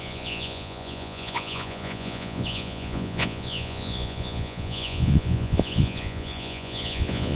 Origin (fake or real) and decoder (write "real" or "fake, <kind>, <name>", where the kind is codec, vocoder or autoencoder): fake, vocoder, Vocos